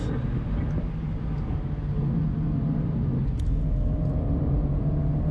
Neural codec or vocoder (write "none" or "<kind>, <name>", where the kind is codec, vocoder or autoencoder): none